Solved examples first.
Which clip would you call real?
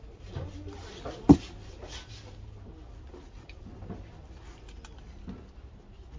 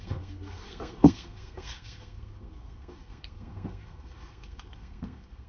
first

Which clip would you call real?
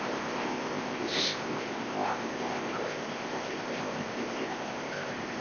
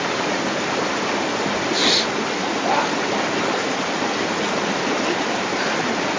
second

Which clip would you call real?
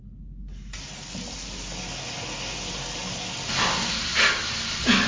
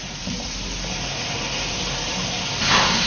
first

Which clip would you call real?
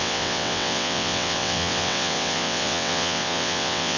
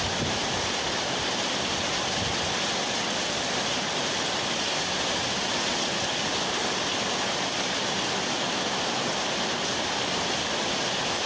second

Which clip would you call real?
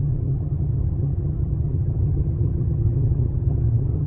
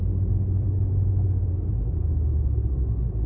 second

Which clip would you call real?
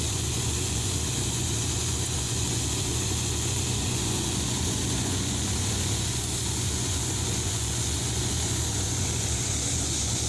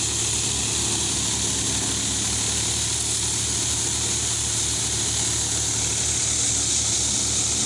second